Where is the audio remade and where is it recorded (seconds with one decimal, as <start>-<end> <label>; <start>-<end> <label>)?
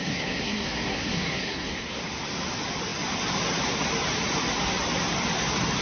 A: 0.0-2.0 remade; 2.0-5.8 recorded